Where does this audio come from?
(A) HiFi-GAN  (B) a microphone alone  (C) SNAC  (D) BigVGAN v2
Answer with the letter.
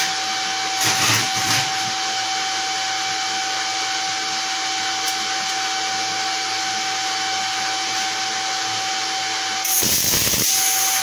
B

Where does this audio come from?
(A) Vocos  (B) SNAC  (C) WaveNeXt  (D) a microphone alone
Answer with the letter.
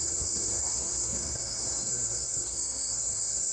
B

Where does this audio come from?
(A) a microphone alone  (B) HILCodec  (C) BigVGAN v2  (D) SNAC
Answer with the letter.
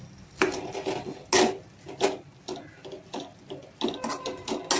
A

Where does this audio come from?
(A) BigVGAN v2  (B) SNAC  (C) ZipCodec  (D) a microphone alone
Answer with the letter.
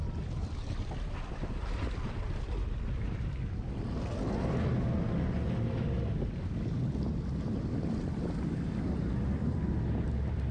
D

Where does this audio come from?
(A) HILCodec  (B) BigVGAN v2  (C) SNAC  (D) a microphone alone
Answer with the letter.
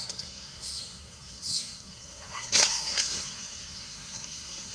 C